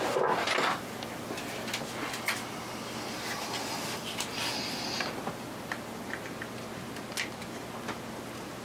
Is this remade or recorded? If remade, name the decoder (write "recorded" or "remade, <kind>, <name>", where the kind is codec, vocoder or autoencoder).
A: recorded